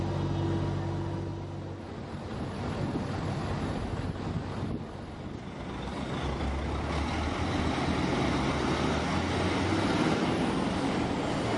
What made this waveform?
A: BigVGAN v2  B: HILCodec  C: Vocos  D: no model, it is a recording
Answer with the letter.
D